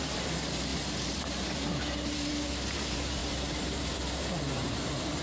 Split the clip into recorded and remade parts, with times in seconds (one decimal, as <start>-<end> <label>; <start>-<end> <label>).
0.0-5.2 remade